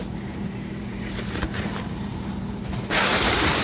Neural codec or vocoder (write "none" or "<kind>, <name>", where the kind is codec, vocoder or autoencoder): vocoder, BigVGAN v2